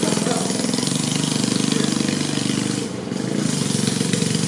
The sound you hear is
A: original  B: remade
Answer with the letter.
A